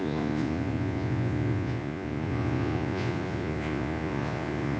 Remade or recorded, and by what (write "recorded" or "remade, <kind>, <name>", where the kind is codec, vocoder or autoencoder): remade, vocoder, Vocos